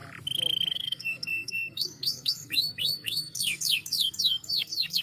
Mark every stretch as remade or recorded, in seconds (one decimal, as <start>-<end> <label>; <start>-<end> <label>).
0.0-0.7 recorded; 0.7-5.0 remade